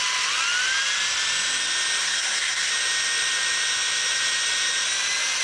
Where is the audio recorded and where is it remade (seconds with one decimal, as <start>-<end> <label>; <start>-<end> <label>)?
0.0-2.0 recorded; 2.0-2.7 remade; 2.7-5.4 recorded